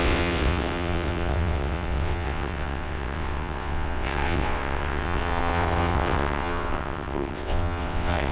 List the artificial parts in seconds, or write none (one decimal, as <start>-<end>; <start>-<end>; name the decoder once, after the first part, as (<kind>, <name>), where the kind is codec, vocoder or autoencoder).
0.0-8.3 (vocoder, WaveNeXt)